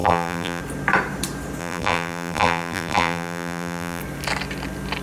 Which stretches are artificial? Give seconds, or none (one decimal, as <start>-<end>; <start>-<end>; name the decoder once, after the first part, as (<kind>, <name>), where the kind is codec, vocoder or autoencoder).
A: 0.0-0.6 (vocoder, BigVGAN v2); 1.6-4.0